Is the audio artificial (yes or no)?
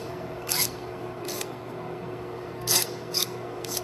yes